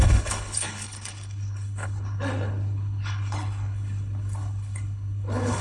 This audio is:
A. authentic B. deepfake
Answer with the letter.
B